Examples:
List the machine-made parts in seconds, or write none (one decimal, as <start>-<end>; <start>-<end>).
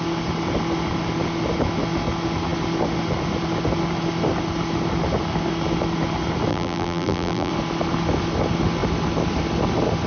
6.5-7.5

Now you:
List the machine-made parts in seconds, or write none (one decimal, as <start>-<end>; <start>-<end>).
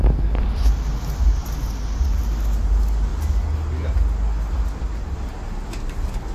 none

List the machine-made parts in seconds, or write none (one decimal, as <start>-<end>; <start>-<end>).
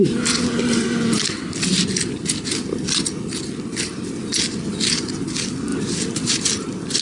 none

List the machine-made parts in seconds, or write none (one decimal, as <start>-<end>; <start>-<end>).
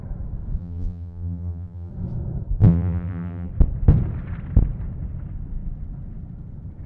0.6-1.9; 2.6-3.5